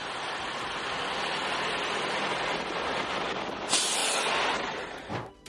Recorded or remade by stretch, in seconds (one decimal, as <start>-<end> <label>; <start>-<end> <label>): 0.0-5.5 recorded